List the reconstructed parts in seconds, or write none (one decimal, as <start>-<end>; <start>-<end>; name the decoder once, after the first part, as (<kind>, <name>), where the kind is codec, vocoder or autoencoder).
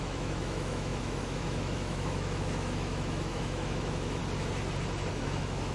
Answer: 0.0-4.2 (autoencoder, DAC-VAE); 5.1-5.7